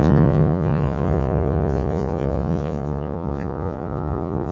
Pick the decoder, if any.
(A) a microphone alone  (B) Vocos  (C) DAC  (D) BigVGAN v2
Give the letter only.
B